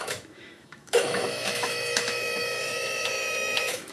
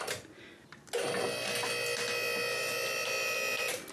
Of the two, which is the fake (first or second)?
first